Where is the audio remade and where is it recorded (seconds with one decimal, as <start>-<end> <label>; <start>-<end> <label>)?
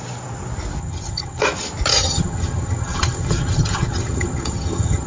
0.0-0.8 recorded; 0.8-1.4 remade; 1.4-1.9 recorded; 1.9-5.1 remade